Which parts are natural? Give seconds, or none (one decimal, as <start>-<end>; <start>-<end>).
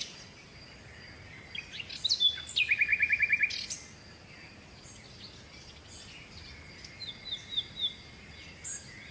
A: 0.0-9.1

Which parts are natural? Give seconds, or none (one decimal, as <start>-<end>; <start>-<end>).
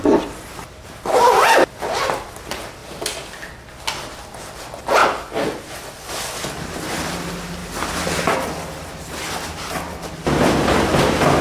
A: 0.0-5.0; 6.1-7.6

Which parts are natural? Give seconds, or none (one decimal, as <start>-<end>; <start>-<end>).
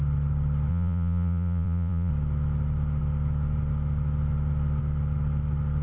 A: 0.0-0.7; 2.1-5.8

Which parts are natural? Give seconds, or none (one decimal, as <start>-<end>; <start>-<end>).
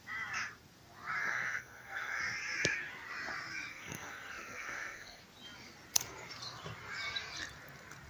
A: 0.0-1.2; 2.2-3.7; 5.2-8.1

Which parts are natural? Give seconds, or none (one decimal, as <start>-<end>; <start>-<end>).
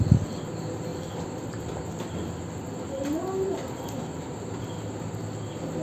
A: 0.0-0.9; 1.8-5.8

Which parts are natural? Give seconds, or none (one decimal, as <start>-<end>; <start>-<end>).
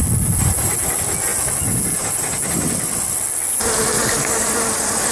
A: 0.0-5.1